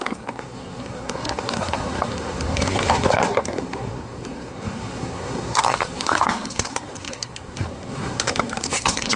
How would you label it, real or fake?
fake